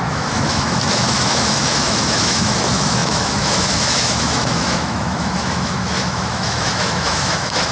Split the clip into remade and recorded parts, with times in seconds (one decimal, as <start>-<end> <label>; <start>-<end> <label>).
0.0-7.7 remade